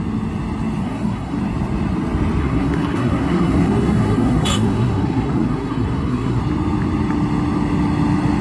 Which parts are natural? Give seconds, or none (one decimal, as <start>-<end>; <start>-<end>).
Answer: 0.0-0.8; 1.4-2.4; 6.4-8.4